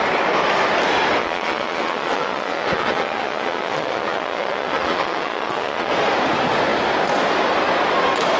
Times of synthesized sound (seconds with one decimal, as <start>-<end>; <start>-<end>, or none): 1.2-5.9